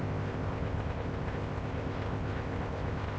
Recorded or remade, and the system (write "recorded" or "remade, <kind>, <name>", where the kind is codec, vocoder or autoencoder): remade, codec, ZipCodec